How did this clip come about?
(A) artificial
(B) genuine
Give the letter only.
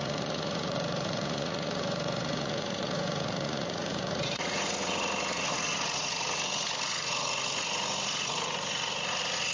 A